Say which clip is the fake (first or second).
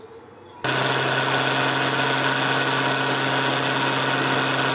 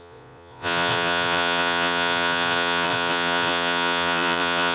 second